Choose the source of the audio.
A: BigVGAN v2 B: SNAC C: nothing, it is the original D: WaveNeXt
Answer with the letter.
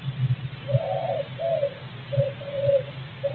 C